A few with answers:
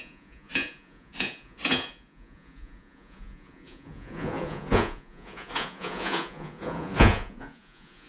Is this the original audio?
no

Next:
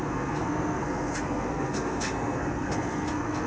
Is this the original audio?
no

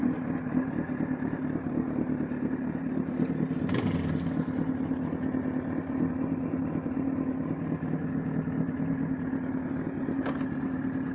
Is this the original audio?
yes